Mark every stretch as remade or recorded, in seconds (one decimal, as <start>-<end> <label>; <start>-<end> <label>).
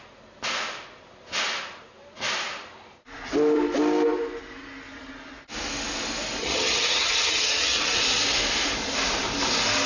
0.0-6.4 recorded; 6.4-8.0 remade; 8.0-9.9 recorded